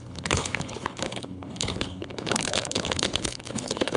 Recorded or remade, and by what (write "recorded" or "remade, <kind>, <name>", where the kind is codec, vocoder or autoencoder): remade, codec, HILCodec